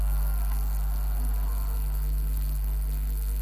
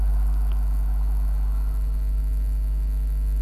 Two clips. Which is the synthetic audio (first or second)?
first